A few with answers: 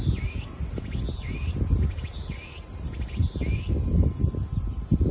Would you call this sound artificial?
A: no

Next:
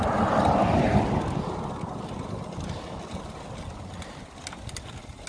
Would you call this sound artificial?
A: no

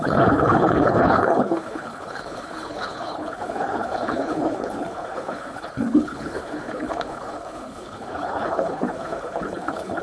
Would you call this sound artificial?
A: yes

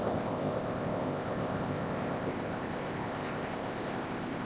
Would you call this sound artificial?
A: yes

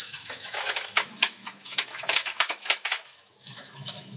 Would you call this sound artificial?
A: yes